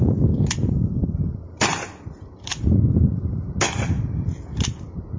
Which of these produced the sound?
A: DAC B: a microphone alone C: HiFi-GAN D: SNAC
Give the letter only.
B